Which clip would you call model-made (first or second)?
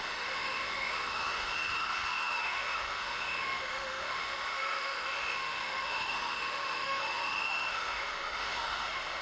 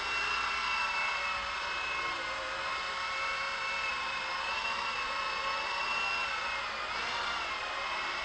first